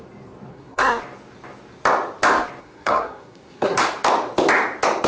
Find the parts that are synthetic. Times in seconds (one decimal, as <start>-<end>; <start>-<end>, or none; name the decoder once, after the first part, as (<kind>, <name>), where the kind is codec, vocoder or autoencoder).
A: 0.5-1.0 (codec, SNAC); 2.6-3.8